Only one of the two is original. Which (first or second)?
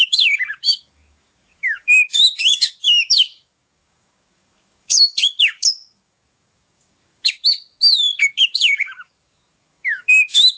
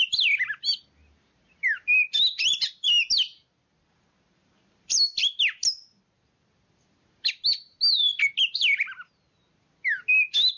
second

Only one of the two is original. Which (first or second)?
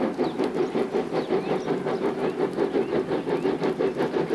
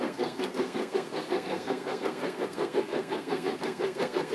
first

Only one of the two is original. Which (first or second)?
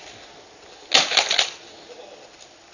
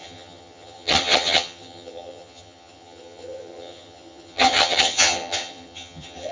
first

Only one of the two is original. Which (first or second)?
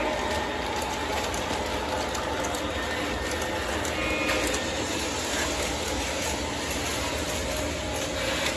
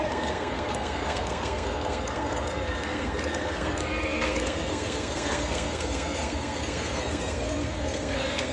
first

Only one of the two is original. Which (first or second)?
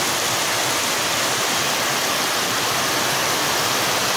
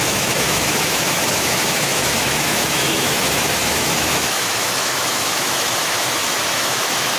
first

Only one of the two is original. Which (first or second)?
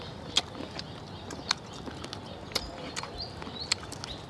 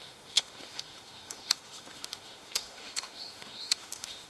first